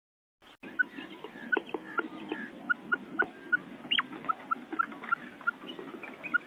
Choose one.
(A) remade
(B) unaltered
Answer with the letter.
B